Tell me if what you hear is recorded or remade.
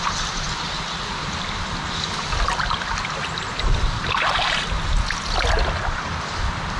recorded